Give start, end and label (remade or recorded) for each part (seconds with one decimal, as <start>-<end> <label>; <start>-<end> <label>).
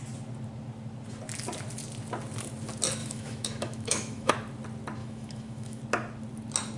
0.0-3.0 recorded; 3.0-4.3 remade; 4.3-5.0 recorded; 5.0-5.8 remade; 5.8-6.8 recorded